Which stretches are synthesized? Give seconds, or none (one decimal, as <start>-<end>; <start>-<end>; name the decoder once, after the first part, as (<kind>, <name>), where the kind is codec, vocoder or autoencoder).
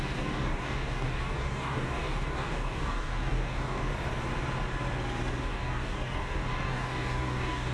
0.0-3.9 (codec, DAC); 5.5-7.7